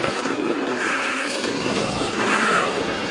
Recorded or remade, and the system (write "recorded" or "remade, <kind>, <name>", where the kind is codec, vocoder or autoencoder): remade, codec, SNAC